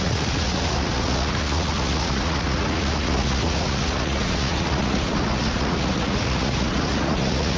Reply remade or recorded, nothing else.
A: remade